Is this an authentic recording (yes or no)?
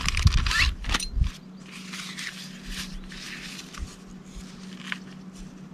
yes